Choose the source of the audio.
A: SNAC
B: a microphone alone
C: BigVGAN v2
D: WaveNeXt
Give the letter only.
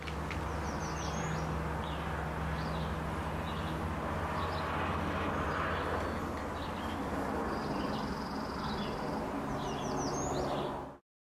B